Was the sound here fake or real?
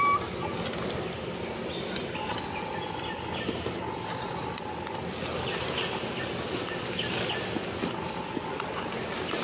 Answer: real